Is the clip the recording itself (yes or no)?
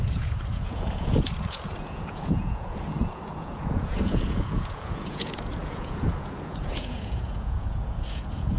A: no